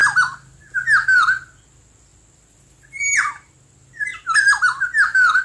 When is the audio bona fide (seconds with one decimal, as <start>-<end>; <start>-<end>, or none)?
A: 0.0-5.4